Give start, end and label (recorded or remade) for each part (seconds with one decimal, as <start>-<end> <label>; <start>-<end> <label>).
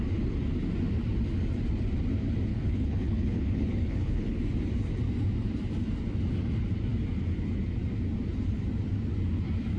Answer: 0.0-2.5 recorded; 2.5-4.4 remade; 4.4-9.8 recorded